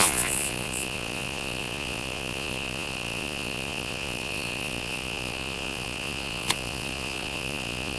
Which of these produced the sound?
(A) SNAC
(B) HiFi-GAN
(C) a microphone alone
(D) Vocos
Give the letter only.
D